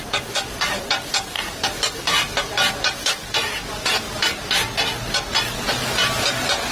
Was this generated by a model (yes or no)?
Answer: no